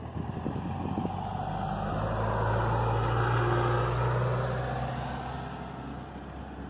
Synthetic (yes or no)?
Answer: no